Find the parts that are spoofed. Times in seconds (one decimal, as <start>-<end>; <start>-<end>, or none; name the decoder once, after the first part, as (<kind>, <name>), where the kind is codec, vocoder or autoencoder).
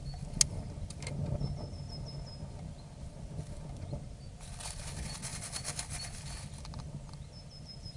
none